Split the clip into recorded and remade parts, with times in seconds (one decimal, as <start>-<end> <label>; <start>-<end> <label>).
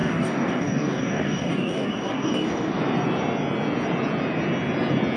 0.0-2.8 remade; 2.8-5.2 recorded